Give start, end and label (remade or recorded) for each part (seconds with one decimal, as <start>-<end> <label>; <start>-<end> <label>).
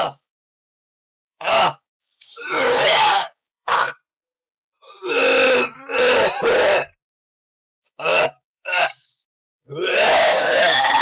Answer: 0.0-4.0 remade; 4.0-7.2 recorded; 7.2-11.0 remade